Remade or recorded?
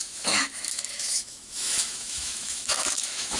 remade